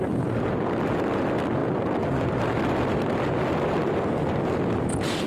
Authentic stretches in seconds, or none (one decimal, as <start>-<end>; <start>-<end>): 0.0-5.3